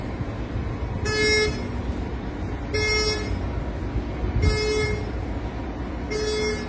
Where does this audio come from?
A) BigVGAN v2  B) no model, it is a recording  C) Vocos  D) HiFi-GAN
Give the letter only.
B